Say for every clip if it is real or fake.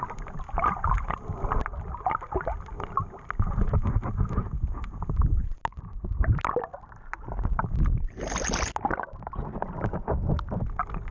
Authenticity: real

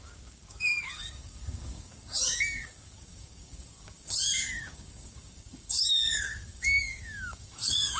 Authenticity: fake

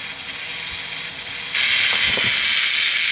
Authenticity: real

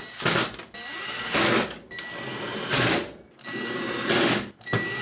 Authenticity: real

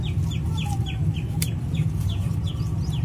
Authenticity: real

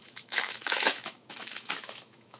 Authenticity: fake